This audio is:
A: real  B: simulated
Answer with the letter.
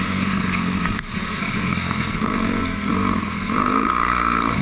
B